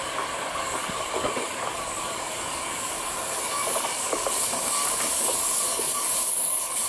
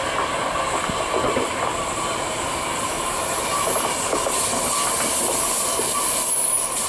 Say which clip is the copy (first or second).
first